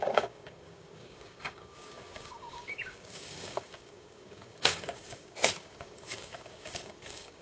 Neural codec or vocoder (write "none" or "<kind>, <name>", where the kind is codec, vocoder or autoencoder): codec, DAC